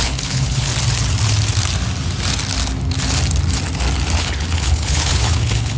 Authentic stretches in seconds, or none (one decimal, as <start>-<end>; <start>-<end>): 0.7-4.2